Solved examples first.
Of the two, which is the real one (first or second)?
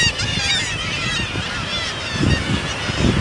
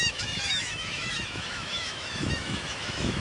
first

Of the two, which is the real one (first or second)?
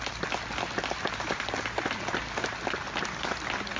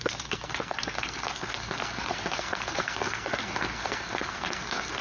first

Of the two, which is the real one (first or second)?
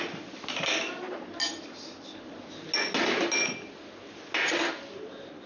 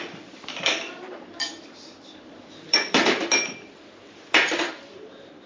first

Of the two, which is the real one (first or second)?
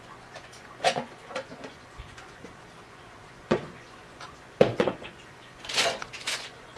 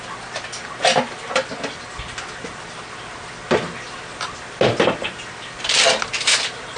second